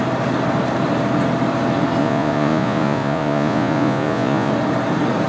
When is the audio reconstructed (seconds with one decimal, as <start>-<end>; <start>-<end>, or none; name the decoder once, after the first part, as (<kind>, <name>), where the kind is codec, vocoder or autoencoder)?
2.0-4.5 (vocoder, Vocos)